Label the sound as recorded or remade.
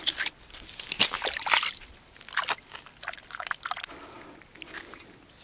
recorded